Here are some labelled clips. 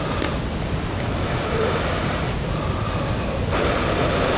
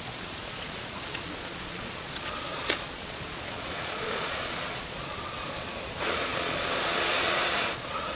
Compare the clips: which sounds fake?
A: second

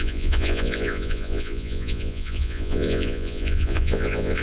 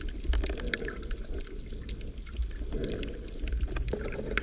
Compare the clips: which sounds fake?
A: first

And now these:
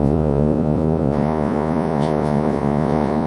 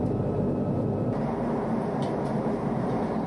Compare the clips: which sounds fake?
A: first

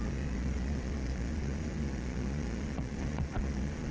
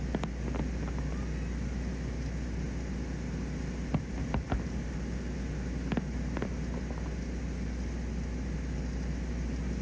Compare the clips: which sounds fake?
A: first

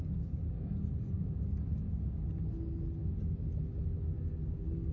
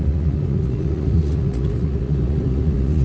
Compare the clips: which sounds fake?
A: second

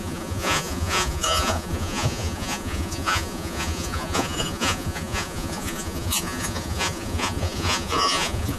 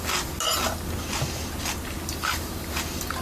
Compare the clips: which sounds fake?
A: first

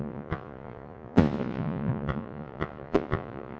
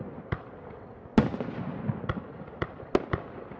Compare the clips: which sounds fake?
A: first